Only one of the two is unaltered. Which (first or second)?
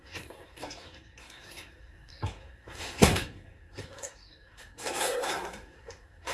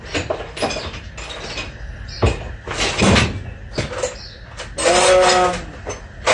second